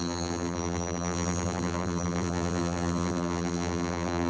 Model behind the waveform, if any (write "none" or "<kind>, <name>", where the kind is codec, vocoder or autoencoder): vocoder, BigVGAN v2